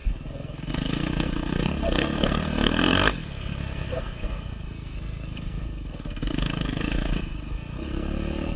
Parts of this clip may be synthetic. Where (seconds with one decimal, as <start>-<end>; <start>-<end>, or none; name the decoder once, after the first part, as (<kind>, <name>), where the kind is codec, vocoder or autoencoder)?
0.0-8.6 (codec, SNAC)